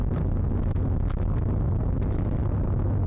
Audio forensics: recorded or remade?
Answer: recorded